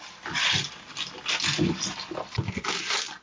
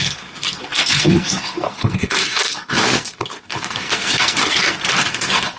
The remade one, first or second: second